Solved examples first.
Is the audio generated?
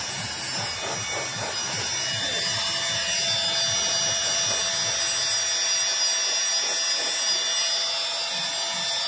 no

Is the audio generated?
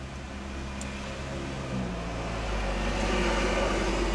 no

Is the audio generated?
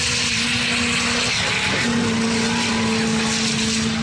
no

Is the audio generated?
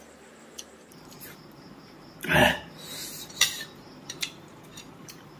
yes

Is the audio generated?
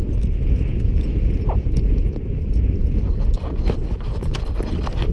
no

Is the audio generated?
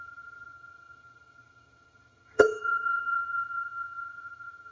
yes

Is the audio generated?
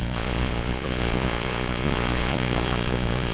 yes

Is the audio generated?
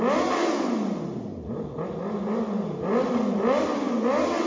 no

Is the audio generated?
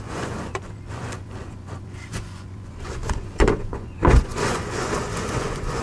yes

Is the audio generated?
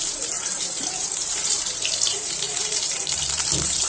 yes